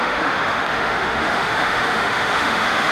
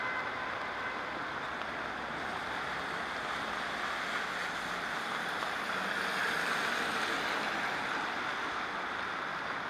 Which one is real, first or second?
second